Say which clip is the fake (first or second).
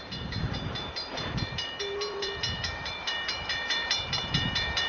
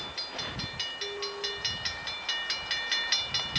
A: first